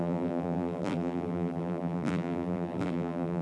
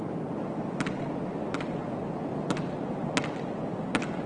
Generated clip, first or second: first